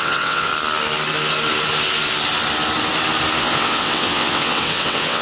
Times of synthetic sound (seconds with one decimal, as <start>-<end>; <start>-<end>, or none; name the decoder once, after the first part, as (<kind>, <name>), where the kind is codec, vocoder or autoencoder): 0.0-0.5 (vocoder, WaveNeXt); 3.4-5.2